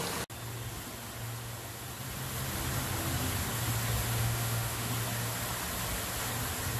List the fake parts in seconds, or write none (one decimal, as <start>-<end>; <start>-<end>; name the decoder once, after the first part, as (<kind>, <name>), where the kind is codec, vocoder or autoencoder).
4.2-4.9 (autoencoder, DAC-VAE)